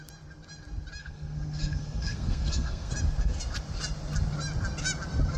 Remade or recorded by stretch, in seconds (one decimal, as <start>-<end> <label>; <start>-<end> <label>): 0.0-1.0 recorded; 1.0-2.9 remade; 2.9-5.4 recorded